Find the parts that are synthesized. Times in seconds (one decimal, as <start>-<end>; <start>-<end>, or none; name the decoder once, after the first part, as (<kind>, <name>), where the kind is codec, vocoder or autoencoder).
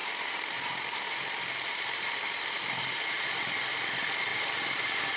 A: 0.0-2.4 (vocoder, BigVGAN v2); 2.9-3.4; 4.3-5.2